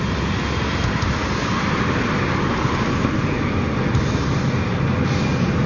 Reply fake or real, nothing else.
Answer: real